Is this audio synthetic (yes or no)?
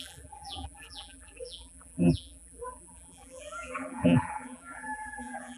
yes